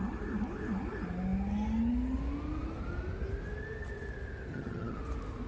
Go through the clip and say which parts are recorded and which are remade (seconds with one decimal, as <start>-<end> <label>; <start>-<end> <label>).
0.0-4.5 recorded; 4.5-5.0 remade; 5.0-5.5 recorded